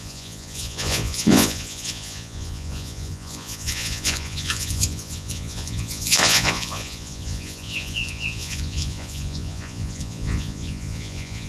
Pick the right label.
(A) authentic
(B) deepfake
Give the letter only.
B